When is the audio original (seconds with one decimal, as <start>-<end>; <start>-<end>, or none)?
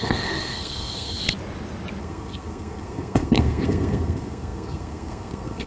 1.2-2.0